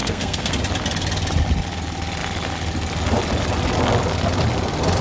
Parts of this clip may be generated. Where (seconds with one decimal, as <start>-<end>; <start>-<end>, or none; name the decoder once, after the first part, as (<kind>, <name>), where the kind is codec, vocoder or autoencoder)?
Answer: 0.0-0.5 (codec, SNAC)